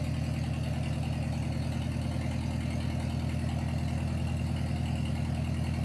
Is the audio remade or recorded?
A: recorded